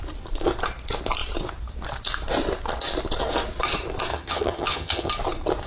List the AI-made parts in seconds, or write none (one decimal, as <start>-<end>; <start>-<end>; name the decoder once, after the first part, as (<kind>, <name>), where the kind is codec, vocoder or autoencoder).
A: 4.1-5.1 (vocoder, HiFi-GAN)